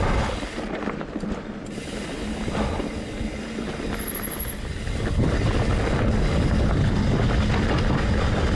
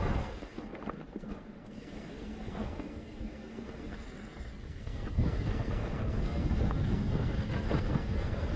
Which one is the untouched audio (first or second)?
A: first